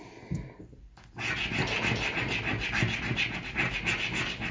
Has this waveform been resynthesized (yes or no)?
no